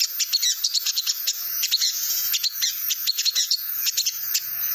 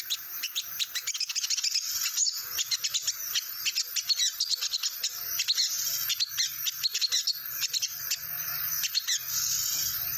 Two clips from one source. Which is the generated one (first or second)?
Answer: first